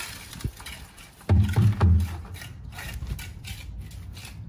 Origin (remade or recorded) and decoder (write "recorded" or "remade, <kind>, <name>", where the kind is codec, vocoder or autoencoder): recorded